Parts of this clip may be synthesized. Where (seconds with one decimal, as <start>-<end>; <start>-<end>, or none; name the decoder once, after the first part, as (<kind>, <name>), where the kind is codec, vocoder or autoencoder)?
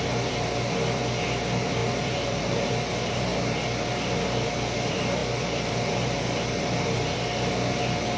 1.8-2.7 (vocoder, BigVGAN v2); 5.2-7.5